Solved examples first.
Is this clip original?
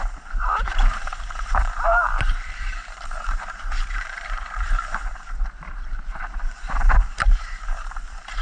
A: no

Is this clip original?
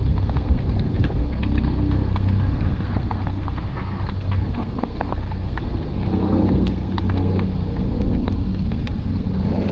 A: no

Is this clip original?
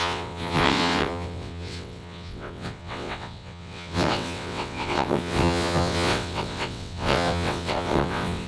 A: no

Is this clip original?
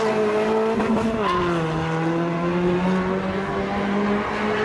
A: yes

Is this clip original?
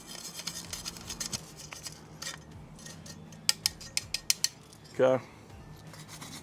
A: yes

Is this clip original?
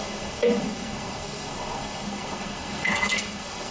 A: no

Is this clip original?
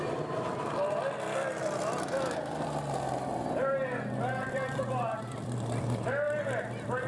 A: no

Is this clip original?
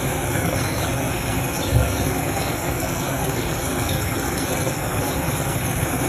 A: no